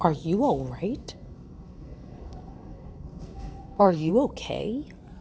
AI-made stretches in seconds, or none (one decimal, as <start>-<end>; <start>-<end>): 1.0-4.1